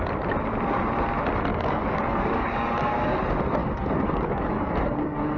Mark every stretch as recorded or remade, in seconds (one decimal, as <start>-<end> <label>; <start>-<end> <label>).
0.0-1.5 recorded; 1.5-3.2 remade; 3.2-3.6 recorded; 3.6-5.4 remade